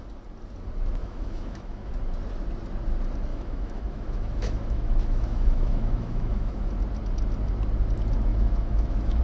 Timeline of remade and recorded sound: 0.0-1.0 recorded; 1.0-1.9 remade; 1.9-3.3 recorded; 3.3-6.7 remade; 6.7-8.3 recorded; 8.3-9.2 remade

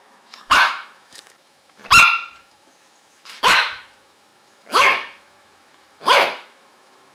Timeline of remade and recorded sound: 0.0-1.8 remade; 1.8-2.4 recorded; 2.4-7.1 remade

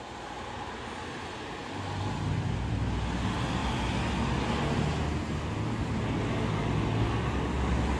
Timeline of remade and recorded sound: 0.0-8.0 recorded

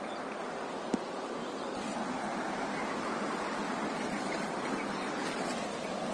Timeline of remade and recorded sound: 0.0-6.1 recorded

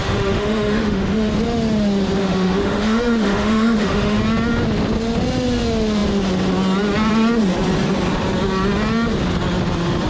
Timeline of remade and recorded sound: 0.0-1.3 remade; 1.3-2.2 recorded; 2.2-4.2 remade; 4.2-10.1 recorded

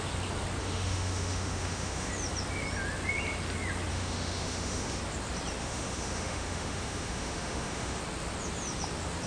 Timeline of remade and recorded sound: 0.0-0.6 recorded; 0.6-2.1 remade; 2.1-3.9 recorded; 3.9-5.0 remade; 5.0-5.6 recorded; 5.6-8.0 remade; 8.0-9.3 recorded